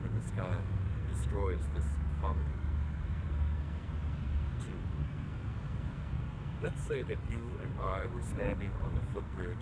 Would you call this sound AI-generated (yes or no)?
yes